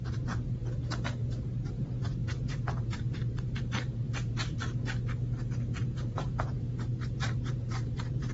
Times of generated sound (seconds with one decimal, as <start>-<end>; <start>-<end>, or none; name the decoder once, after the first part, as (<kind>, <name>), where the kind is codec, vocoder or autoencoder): 0.0-0.6 (vocoder, BigVGAN v2); 1.7-4.6; 5.8-8.3